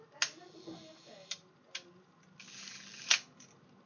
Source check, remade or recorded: recorded